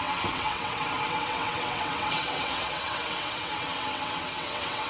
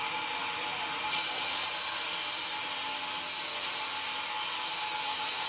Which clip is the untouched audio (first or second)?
second